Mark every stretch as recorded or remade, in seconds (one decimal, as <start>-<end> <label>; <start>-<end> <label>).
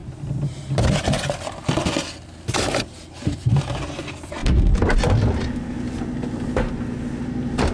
0.0-7.7 recorded